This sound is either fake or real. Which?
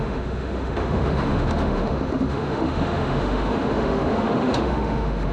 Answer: fake